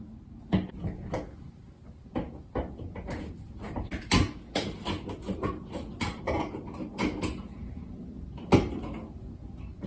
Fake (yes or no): no